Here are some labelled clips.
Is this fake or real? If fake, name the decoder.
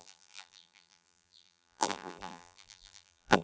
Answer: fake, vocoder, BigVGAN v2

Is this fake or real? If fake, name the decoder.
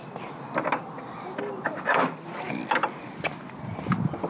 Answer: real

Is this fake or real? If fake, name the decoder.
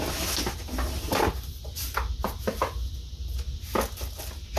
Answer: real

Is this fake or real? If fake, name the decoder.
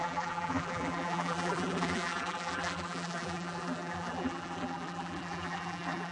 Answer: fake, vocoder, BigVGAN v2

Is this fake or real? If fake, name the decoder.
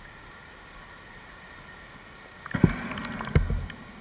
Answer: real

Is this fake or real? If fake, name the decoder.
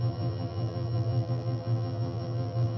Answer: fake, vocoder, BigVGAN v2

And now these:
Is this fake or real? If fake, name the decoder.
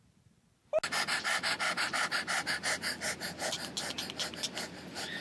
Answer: real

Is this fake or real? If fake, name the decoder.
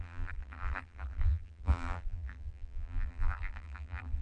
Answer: fake, vocoder, BigVGAN v2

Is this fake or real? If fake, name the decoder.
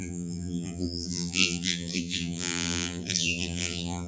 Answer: fake, vocoder, BigVGAN v2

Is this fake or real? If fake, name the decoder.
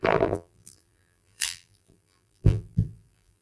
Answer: fake, vocoder, BigVGAN v2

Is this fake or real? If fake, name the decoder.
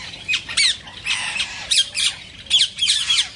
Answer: fake, vocoder, BigVGAN v2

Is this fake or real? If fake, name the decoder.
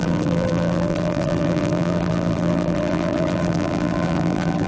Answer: fake, vocoder, BigVGAN v2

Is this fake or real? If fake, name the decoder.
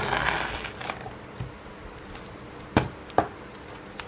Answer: real